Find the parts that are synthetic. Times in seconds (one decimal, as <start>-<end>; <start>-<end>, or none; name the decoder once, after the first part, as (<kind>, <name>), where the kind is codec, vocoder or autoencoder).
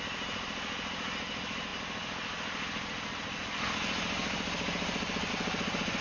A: none